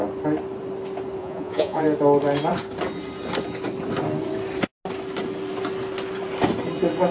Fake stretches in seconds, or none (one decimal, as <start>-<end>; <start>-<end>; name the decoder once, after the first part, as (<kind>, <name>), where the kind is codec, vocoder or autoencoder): 1.2-1.8 (vocoder, Vocos)